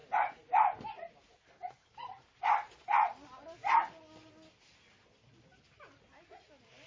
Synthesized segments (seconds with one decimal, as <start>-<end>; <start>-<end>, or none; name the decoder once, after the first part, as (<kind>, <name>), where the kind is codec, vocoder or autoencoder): none